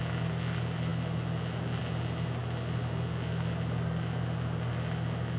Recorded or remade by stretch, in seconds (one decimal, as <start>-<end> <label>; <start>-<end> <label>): 0.0-5.4 recorded